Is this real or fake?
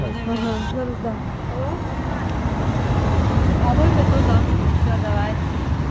real